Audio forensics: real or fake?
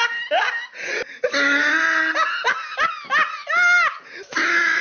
real